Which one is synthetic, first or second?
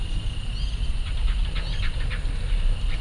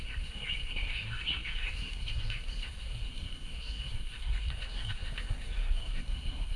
second